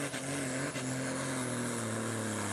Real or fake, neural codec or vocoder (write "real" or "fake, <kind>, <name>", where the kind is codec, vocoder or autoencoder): real